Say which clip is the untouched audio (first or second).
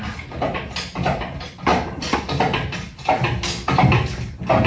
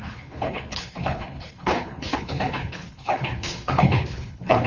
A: first